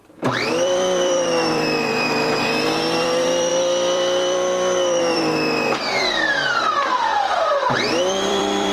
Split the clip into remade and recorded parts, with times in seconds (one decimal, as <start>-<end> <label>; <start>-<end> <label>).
0.0-8.7 remade